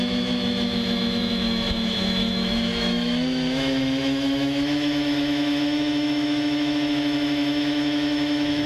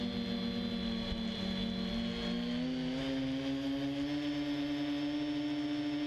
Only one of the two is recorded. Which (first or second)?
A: second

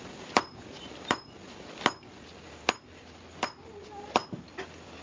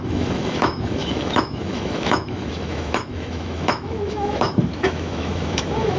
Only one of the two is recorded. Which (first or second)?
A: first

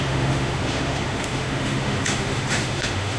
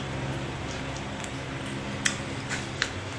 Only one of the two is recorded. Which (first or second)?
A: second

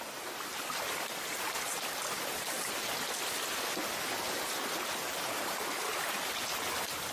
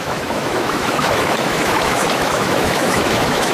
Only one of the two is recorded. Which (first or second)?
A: first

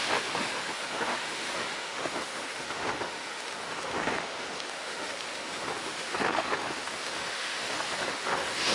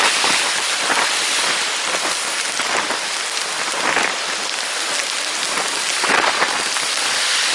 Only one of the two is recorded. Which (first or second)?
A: second